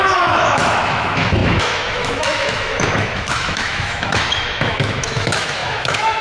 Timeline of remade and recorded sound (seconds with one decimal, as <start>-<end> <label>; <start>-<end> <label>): 0.0-6.2 remade